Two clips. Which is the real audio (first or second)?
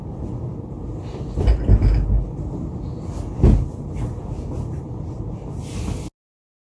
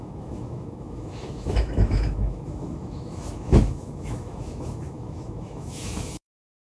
first